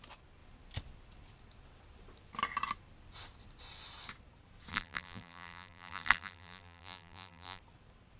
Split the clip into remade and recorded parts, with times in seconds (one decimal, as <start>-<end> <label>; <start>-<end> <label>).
0.0-4.7 recorded; 4.7-7.6 remade; 7.6-8.2 recorded

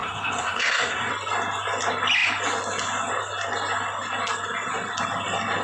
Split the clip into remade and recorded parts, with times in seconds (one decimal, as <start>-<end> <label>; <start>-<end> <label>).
0.0-1.1 remade; 1.1-5.6 recorded

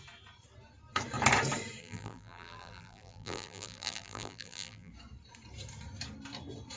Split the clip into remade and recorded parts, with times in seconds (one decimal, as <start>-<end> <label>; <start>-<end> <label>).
0.0-1.8 recorded; 1.8-4.9 remade; 4.9-6.8 recorded

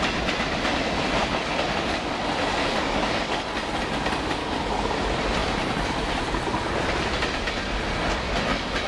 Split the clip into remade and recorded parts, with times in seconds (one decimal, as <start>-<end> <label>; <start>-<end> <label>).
0.0-1.2 recorded; 1.2-2.2 remade; 2.2-2.6 recorded; 2.6-3.4 remade; 3.4-4.4 recorded; 4.4-5.0 remade; 5.0-8.9 recorded

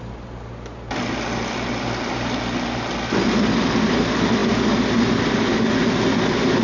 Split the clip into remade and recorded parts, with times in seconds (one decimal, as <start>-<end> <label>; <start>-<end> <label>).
0.0-6.6 recorded

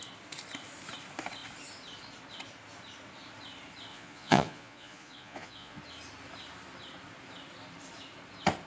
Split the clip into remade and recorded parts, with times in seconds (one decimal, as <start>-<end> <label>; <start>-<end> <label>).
0.0-3.9 recorded; 3.9-5.8 remade; 5.8-8.7 recorded